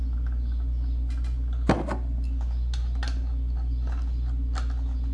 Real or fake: real